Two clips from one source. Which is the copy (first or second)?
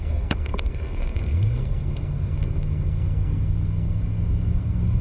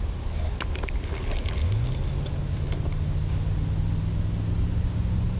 first